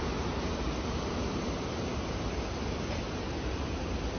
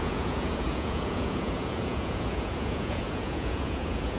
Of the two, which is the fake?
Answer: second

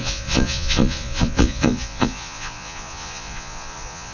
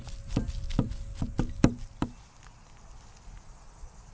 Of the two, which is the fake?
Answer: first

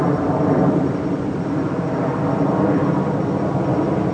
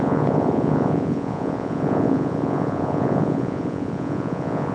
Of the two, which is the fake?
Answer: second